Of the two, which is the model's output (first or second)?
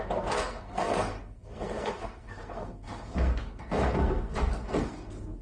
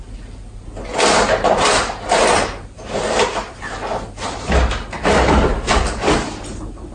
first